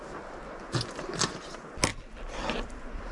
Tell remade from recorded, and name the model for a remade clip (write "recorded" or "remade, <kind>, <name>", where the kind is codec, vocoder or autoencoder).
recorded